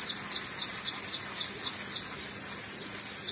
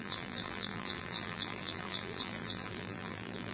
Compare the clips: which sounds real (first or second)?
first